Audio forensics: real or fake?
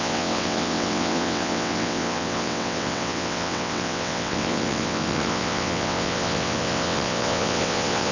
fake